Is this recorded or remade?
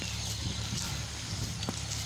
recorded